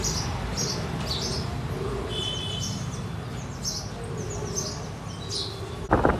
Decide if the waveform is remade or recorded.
recorded